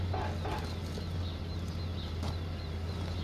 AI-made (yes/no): no